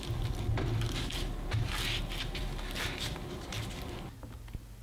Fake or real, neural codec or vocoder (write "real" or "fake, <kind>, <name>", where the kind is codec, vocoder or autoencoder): real